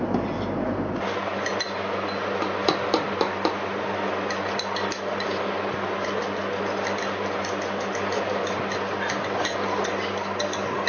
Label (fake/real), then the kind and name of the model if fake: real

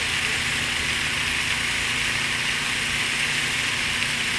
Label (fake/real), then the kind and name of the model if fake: real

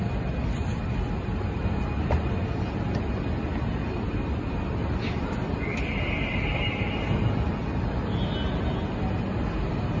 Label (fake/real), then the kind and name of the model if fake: real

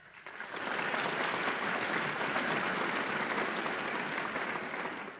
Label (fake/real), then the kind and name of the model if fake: real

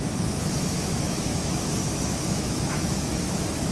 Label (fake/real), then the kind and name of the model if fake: fake, autoencoder, DAC-VAE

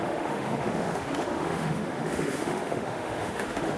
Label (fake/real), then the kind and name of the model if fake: fake, autoencoder, DAC-VAE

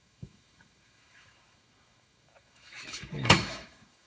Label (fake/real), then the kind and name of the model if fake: fake, autoencoder, DAC-VAE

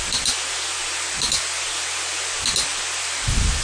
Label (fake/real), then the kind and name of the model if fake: real